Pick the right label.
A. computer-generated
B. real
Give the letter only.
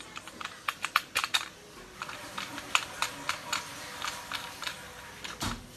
B